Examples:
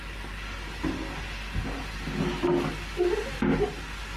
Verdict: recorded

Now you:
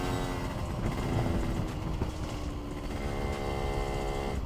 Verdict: recorded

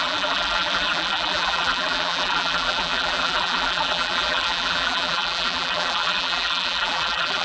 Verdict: remade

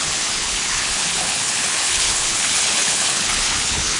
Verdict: remade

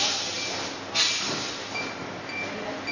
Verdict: recorded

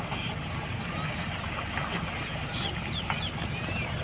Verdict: recorded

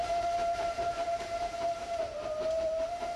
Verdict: remade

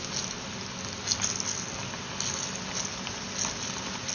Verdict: recorded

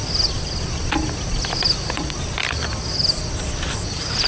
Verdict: remade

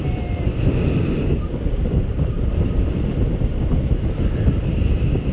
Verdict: recorded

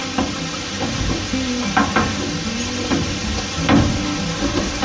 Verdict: recorded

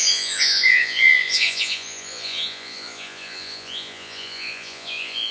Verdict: remade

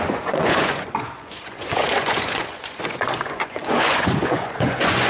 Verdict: remade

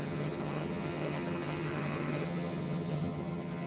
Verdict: remade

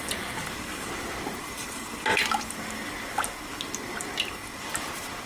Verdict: recorded